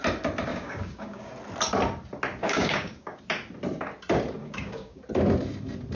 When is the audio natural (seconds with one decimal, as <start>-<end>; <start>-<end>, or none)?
0.0-0.5; 1.3-2.4; 3.2-4.4; 5.0-5.9